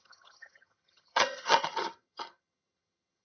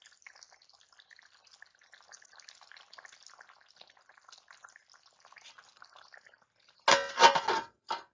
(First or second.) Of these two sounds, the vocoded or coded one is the first